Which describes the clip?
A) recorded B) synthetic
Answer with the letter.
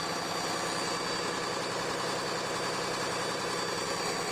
A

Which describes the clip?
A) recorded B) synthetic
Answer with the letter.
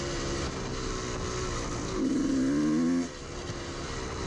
A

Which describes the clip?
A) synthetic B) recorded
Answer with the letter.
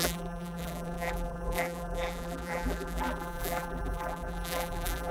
A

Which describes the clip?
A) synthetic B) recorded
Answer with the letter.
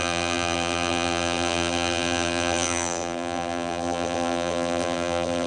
A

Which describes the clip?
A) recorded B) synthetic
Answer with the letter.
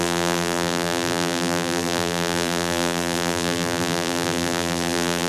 B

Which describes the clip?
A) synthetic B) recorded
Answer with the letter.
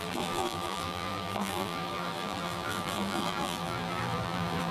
A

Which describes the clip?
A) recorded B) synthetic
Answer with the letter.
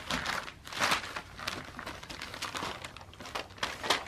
A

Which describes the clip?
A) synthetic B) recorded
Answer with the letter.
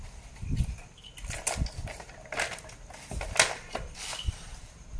B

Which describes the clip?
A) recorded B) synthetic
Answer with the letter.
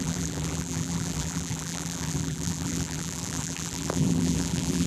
B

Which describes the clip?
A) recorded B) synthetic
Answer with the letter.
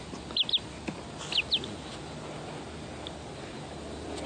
A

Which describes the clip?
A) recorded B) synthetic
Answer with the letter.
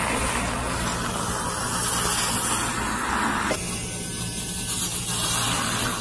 A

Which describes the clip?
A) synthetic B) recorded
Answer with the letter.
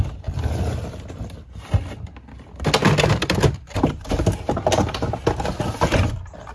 B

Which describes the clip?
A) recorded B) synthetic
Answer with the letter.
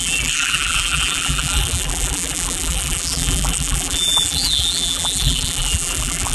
B